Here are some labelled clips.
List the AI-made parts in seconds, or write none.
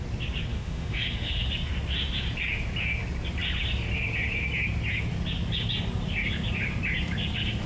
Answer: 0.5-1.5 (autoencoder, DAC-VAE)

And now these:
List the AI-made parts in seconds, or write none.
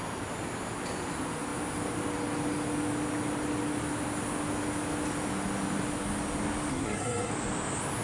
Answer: 6.7-7.3 (codec, SNAC)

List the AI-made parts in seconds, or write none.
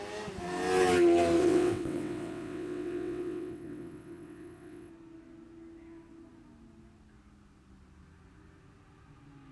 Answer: 1.4-4.9 (vocoder, WaveNeXt)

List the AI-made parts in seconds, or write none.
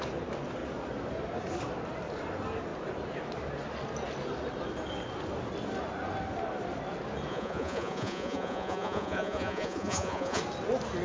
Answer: 7.3-10.4 (vocoder, Vocos)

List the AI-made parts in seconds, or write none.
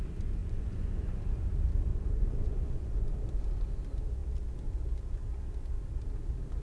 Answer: 0.4-1.4 (vocoder, Vocos); 1.9-3.1